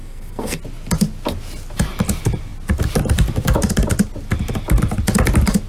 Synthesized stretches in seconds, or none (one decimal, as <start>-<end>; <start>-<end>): 0.0-0.6